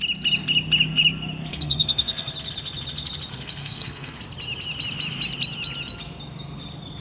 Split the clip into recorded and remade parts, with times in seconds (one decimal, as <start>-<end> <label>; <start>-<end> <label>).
0.0-1.5 recorded; 1.5-2.3 remade; 2.3-3.3 recorded; 3.3-4.2 remade; 4.2-7.0 recorded